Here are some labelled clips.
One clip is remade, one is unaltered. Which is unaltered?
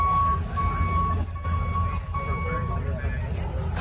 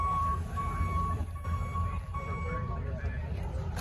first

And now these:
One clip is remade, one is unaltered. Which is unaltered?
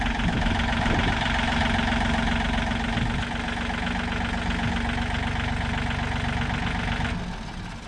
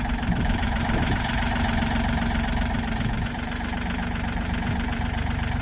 first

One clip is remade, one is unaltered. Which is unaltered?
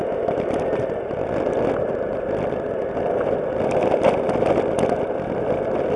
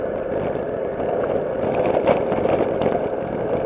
first